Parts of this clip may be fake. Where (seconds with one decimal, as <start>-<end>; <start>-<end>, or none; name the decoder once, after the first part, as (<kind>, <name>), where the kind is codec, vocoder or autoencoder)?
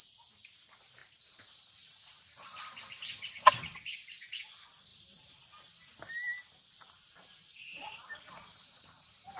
1.0-3.6 (vocoder, BigVGAN v2); 4.9-5.6; 7.7-9.4